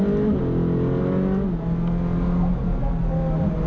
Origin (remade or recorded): recorded